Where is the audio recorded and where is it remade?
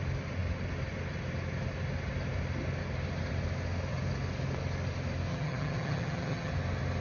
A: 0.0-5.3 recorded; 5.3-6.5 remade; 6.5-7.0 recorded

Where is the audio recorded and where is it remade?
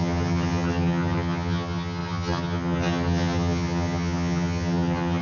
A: 0.0-5.2 remade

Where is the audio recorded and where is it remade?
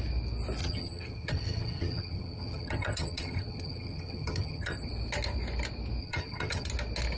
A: 0.0-0.6 recorded; 0.6-4.9 remade; 4.9-6.0 recorded; 6.0-6.7 remade; 6.7-7.2 recorded